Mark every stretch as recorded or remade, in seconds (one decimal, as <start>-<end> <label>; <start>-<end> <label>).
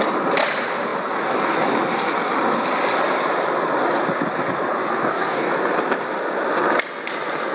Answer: 0.0-5.0 recorded; 5.0-5.5 remade; 5.5-7.5 recorded